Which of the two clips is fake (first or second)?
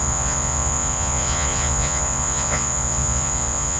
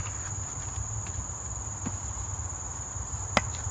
first